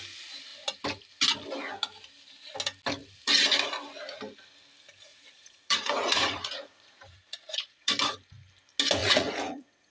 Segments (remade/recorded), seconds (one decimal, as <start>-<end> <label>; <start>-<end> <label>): 0.0-5.1 recorded; 5.1-7.9 remade; 7.9-9.0 recorded; 9.0-9.9 remade